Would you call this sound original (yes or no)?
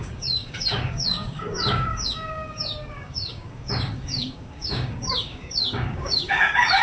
no